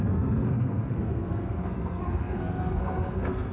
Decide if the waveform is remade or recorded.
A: remade